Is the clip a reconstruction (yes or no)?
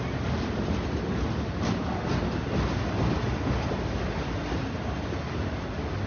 no